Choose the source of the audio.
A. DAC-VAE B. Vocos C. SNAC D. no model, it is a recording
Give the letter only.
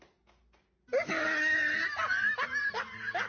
D